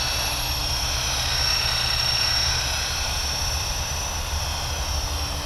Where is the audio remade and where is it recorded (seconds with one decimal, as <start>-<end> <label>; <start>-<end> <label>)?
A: 0.0-5.5 recorded